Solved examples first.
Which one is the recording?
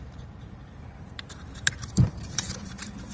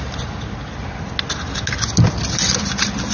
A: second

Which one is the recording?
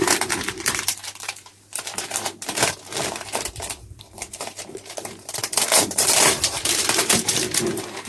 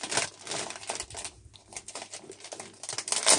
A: second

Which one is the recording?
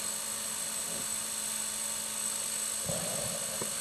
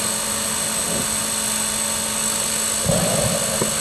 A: second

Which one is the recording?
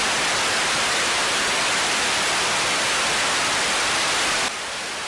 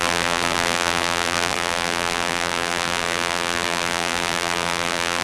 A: first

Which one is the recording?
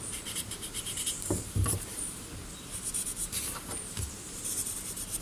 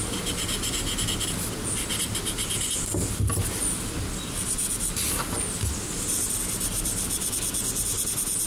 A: second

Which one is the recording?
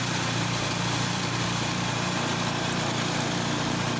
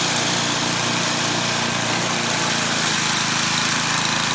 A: second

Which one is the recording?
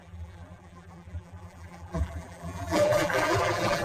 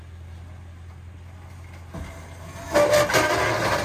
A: second